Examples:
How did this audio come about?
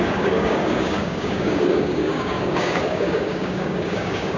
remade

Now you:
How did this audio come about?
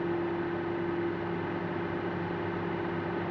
recorded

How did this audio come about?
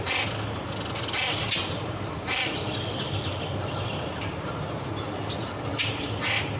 recorded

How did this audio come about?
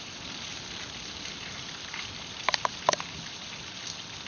recorded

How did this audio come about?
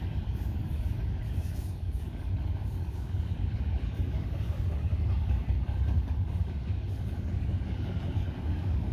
remade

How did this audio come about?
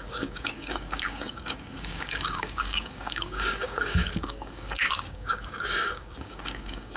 remade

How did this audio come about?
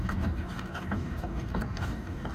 remade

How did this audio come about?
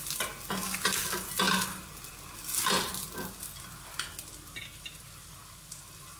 recorded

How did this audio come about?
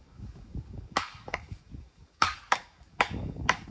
remade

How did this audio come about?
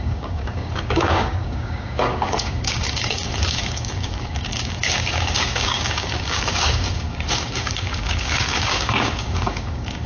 remade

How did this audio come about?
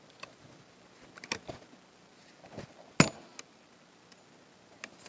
recorded